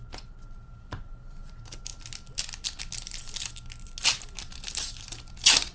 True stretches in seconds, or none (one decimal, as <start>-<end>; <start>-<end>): 0.0-5.7